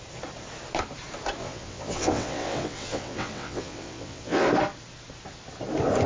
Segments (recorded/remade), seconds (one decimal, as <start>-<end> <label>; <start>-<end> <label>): 0.0-1.4 recorded; 1.4-4.5 remade; 4.5-6.1 recorded